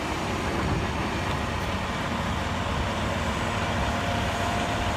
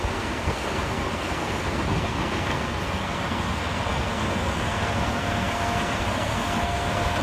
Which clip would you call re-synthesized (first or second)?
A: second